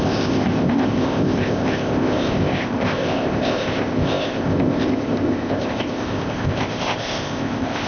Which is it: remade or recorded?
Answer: remade